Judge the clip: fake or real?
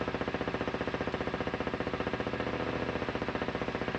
real